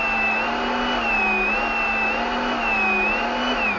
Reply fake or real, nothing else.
real